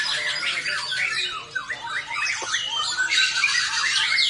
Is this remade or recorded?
recorded